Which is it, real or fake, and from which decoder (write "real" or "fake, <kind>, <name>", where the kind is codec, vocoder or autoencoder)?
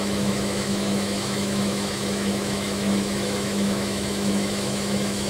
fake, autoencoder, DAC-VAE